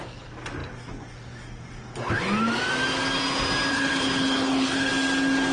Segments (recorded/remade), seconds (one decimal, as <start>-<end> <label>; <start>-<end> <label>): 0.0-3.7 recorded; 3.7-4.9 remade; 4.9-5.5 recorded